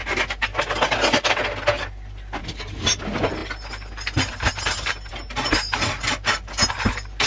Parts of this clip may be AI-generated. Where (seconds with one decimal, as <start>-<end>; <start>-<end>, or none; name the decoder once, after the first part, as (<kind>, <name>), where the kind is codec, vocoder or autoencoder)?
2.4-3.0 (vocoder, BigVGAN v2)